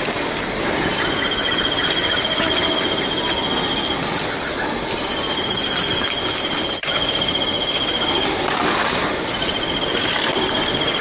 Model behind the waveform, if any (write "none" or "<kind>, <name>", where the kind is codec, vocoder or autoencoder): none